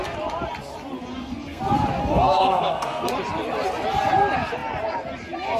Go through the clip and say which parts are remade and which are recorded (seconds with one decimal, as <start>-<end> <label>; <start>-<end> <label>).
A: 0.0-1.1 recorded; 1.1-1.6 remade; 1.6-2.0 recorded; 2.0-3.1 remade; 3.1-5.6 recorded